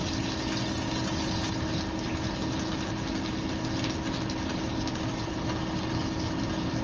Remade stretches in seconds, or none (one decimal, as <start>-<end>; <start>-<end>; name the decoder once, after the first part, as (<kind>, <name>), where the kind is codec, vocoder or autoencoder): none